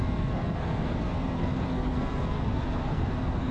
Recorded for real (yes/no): no